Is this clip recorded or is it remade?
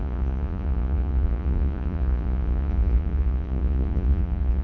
remade